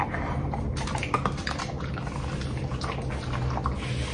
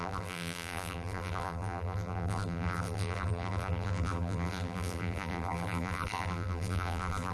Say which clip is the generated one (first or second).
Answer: second